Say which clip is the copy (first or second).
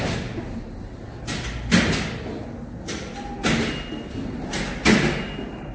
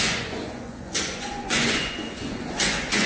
second